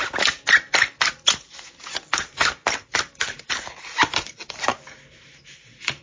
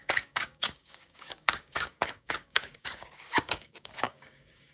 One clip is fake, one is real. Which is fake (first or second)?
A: second